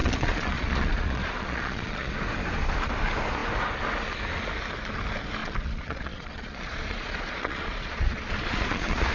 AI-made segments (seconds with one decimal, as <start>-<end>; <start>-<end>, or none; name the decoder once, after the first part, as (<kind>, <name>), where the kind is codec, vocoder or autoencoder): 0.0-2.1 (vocoder, Vocos); 5.4-9.1